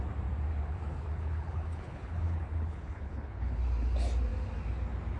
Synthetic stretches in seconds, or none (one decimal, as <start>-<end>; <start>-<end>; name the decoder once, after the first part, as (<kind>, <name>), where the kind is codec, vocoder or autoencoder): 0.5-3.6 (codec, HILCodec)